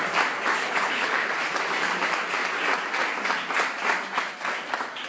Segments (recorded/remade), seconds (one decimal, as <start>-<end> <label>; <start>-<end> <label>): 0.0-0.6 recorded; 0.6-1.3 remade; 1.3-5.1 recorded